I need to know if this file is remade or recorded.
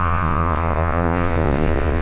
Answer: remade